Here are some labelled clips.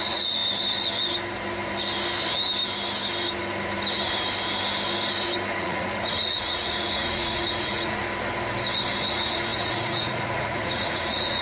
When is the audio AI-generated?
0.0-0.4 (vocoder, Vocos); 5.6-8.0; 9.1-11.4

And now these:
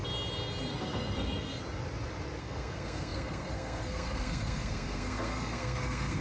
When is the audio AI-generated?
0.7-1.6 (codec, SNAC); 2.4-6.2

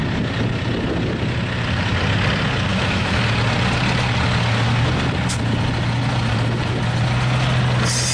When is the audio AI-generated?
2.7-3.2 (autoencoder, DAC-VAE)

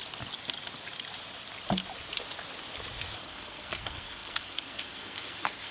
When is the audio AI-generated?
3.2-5.7 (codec, SNAC)

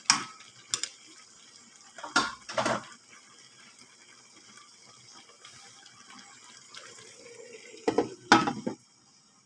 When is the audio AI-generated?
0.9-5.2 (vocoder, BigVGAN v2); 8.4-9.0

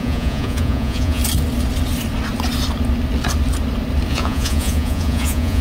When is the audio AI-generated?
0.0-1.2 (vocoder, Vocos); 4.1-5.6

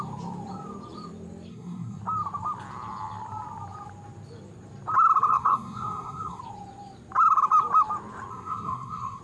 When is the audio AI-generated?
1.5-2.0 (codec, SNAC); 5.3-6.4; 8.3-9.2

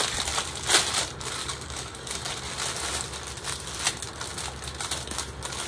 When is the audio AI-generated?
1.4-2.3 (codec, DAC)